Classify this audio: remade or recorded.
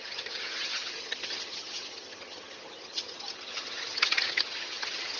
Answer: remade